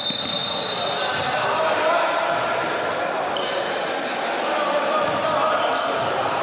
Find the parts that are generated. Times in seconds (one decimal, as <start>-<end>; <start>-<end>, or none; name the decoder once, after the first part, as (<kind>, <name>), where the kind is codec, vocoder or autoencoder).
none